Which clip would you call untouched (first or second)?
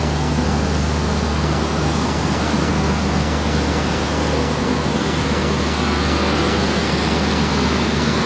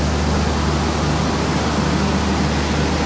second